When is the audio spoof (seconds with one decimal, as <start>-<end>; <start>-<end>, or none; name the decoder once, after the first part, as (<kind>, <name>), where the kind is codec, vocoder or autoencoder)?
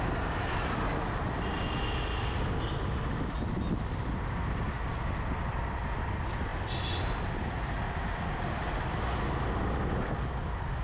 none